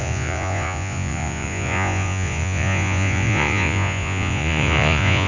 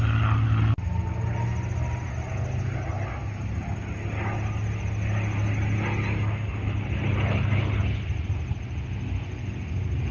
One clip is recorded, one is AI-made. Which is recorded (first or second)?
second